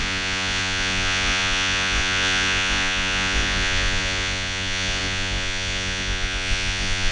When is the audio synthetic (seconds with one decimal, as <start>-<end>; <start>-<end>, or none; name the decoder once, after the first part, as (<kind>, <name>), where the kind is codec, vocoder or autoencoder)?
0.0-7.1 (vocoder, Vocos)